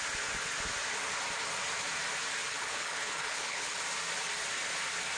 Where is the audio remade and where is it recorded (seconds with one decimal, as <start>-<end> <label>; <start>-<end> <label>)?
0.0-2.4 recorded; 2.4-3.8 remade; 3.8-5.2 recorded